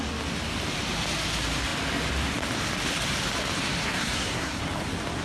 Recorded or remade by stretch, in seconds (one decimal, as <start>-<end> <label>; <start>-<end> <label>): 0.0-3.8 recorded; 3.8-4.6 remade; 4.6-5.2 recorded

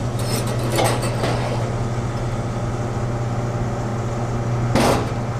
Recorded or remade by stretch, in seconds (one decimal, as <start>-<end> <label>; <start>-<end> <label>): 0.0-5.4 recorded

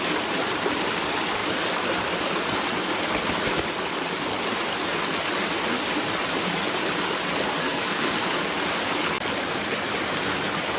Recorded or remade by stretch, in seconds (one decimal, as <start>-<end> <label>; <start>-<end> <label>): 0.0-7.6 recorded; 7.6-8.1 remade; 8.1-10.8 recorded